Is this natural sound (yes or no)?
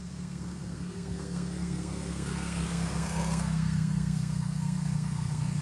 no